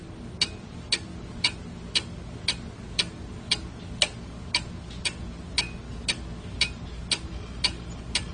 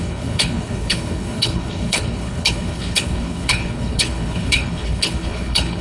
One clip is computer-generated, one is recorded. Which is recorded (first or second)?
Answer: first